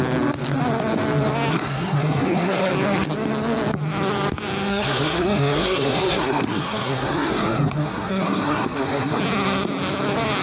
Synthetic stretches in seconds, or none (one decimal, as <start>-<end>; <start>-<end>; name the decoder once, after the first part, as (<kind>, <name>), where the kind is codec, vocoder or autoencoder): 1.5-2.7 (codec, SNAC); 4.7-9.2